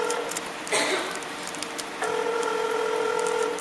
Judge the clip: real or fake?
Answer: real